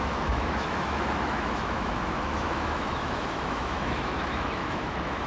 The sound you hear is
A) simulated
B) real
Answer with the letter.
A